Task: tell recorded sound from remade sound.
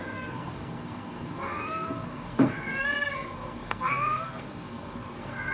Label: remade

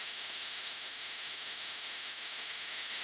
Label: remade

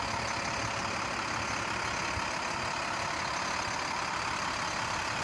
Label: recorded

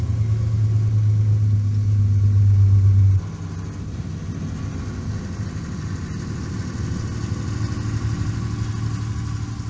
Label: recorded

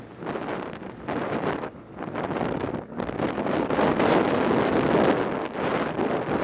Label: recorded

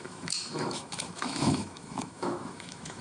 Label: remade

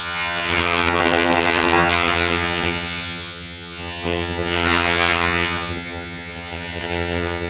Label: remade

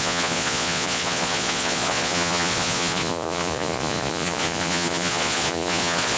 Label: remade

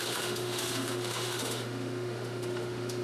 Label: remade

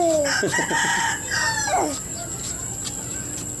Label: remade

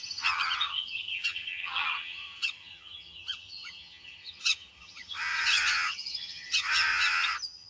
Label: remade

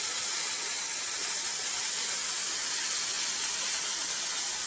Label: recorded